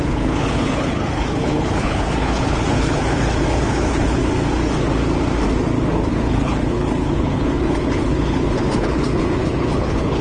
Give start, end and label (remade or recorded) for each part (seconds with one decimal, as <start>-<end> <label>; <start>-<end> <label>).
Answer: 0.0-4.2 remade; 4.2-6.1 recorded; 6.1-10.2 remade